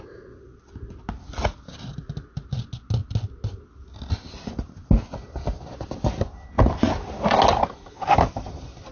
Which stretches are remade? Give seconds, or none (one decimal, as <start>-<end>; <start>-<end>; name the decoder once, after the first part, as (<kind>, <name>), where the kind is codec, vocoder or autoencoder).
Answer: none